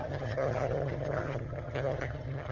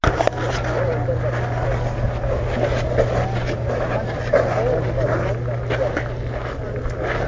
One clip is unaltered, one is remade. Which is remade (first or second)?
first